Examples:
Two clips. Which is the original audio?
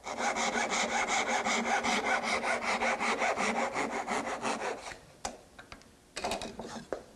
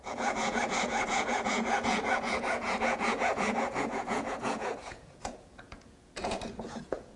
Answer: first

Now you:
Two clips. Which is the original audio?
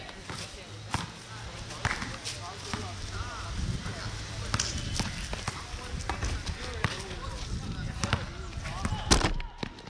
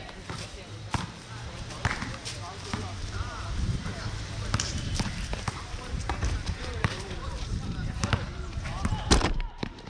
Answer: first